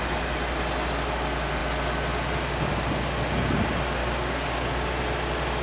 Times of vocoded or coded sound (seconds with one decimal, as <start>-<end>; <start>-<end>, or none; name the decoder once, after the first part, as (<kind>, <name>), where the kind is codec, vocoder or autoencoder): 4.0-5.0 (codec, DAC)